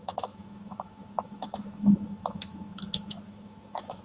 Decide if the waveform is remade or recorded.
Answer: remade